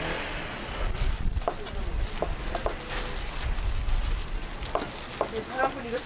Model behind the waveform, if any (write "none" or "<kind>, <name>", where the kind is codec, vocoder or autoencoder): none